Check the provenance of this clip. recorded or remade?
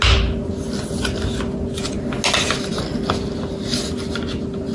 recorded